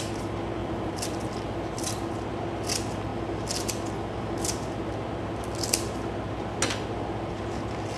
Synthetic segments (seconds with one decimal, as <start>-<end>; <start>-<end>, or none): 0.6-2.1

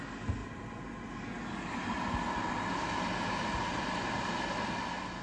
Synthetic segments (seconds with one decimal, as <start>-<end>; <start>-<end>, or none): none

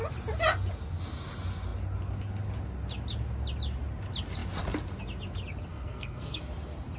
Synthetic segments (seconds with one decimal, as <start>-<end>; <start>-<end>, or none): 5.7-6.4

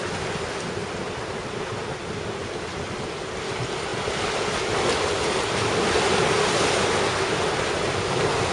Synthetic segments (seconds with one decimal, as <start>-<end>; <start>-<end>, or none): none

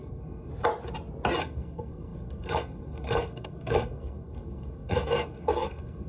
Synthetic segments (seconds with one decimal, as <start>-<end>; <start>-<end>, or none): 0.0-0.5; 1.4-6.1